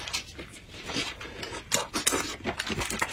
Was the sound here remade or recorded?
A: recorded